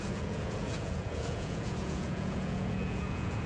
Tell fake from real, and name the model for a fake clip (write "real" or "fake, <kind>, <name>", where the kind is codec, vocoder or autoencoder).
fake, vocoder, Vocos